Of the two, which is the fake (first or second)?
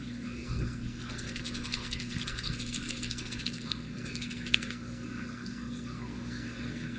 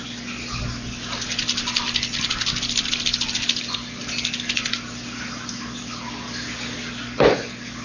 first